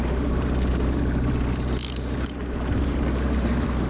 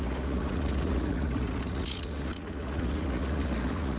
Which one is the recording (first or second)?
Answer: first